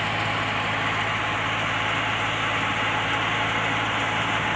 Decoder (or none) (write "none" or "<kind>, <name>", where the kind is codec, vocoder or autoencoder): none